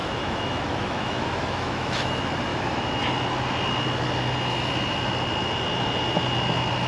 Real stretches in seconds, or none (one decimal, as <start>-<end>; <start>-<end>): 2.1-2.5; 3.0-6.9